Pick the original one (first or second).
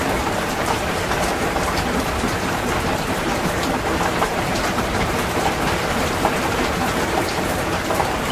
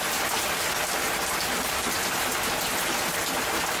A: second